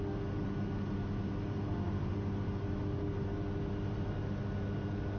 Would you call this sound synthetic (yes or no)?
no